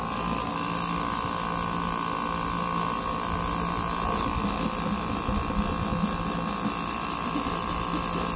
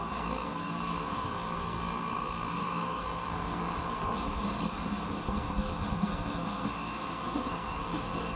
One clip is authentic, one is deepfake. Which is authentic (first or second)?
first